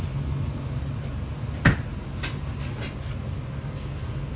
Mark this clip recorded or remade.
recorded